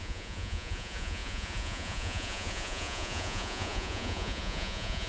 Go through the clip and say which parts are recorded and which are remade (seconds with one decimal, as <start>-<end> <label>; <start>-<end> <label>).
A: 0.0-5.1 remade